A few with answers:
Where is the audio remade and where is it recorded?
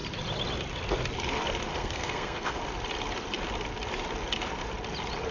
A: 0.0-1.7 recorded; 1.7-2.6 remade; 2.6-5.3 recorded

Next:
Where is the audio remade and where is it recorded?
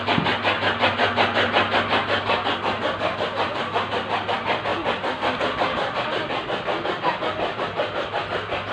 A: 0.0-8.7 recorded